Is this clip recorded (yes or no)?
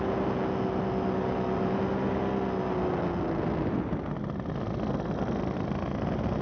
yes